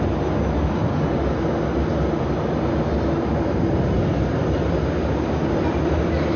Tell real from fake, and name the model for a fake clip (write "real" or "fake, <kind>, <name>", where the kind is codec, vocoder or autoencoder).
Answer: real